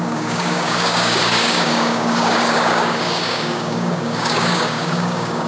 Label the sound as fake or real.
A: fake